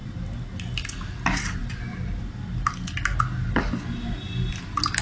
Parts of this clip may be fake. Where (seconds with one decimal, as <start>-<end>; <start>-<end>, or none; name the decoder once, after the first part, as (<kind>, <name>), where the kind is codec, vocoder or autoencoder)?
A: none